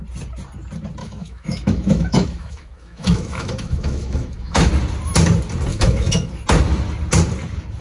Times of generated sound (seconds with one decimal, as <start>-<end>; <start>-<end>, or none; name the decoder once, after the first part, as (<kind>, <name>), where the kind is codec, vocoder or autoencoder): 1.0-4.7 (autoencoder, DAC-VAE); 5.7-6.3